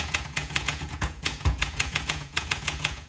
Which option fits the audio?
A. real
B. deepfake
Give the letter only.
B